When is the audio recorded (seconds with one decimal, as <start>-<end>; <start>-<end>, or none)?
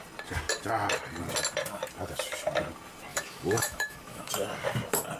0.0-3.1; 4.3-5.2